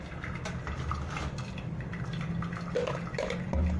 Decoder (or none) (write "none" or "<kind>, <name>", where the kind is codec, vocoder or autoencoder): none